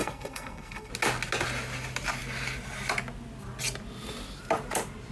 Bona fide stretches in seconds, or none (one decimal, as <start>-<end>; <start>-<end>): 0.9-5.1